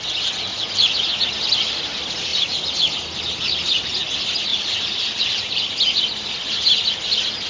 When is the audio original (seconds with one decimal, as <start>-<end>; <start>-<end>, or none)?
0.0-0.5; 1.1-2.3; 3.2-4.5; 5.7-7.5